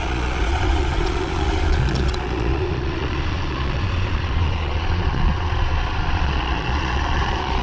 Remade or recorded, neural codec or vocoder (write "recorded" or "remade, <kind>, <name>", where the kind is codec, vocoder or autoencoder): remade, vocoder, Vocos